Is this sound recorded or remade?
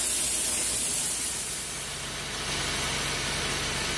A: recorded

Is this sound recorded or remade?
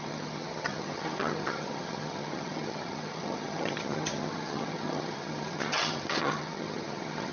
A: remade